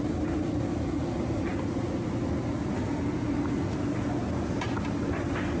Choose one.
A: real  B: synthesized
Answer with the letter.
A